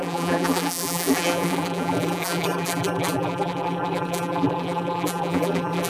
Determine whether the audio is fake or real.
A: fake